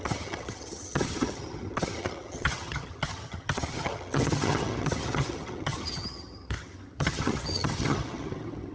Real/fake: fake